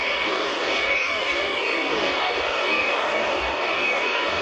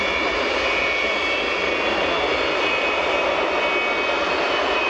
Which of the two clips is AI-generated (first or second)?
first